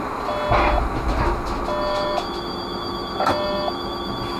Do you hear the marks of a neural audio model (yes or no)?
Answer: no